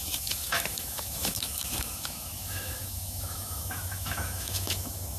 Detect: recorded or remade remade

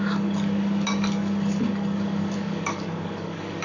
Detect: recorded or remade remade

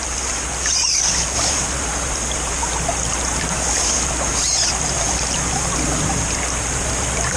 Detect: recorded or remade recorded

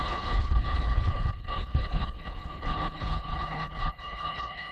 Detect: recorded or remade remade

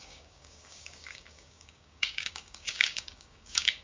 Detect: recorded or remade remade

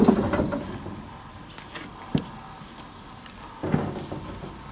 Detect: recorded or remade recorded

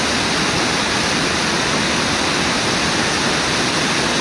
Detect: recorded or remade recorded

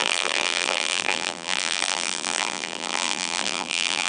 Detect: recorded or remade remade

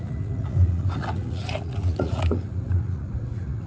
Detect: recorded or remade remade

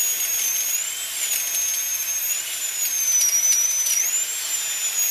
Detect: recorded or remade recorded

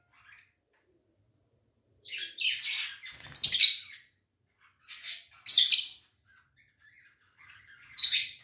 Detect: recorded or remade recorded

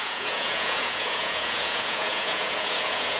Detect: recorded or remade remade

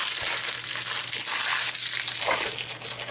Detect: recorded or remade recorded